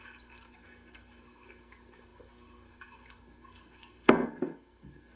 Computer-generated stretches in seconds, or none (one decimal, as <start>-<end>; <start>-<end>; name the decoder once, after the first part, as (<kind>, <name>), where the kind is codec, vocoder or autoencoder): 0.0-5.2 (codec, SNAC)